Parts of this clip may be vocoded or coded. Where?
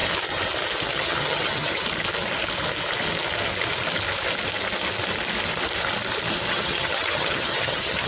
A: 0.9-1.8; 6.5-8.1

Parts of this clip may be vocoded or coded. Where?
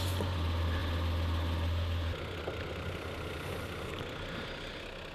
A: none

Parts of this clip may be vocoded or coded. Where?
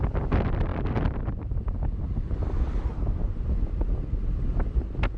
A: none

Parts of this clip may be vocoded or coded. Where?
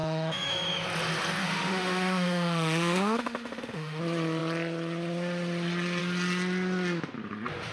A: 0.0-0.5; 1.4-4.0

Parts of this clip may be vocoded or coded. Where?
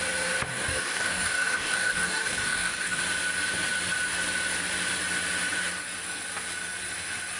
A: 0.5-3.0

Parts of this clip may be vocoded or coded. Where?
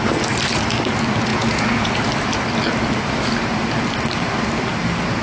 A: 1.3-1.9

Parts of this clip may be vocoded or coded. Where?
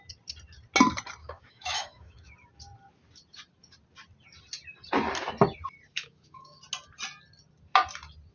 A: 1.2-2.3; 5.9-6.6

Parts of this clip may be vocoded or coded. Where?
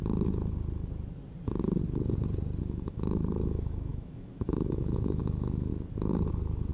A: 2.6-5.7